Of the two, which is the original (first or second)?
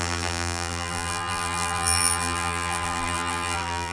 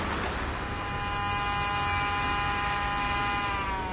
second